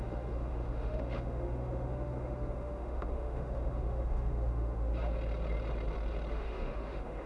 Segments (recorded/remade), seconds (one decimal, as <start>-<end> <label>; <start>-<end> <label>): 0.0-4.9 remade; 4.9-6.3 recorded; 6.3-7.3 remade